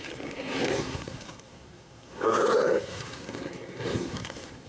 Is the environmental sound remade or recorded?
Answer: remade